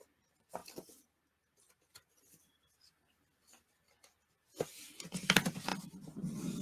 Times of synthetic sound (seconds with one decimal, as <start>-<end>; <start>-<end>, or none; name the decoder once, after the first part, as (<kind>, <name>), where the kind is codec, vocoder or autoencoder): 0.6-2.4 (vocoder, BigVGAN v2)